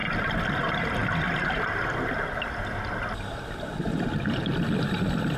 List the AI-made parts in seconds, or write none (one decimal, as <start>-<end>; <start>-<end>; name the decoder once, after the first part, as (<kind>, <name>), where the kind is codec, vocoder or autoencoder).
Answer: none